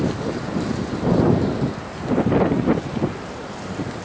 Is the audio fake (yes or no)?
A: no